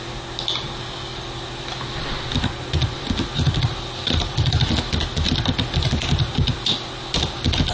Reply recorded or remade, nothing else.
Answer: recorded